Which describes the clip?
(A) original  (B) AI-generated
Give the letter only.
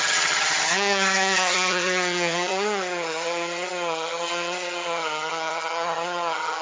B